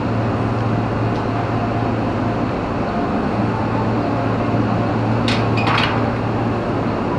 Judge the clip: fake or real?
real